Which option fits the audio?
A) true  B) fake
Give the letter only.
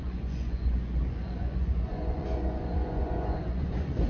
B